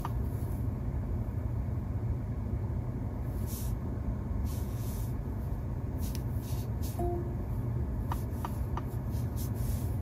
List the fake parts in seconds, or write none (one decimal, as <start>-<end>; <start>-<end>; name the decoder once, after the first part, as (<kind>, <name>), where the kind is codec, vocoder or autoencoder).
4.5-5.9 (vocoder, Vocos)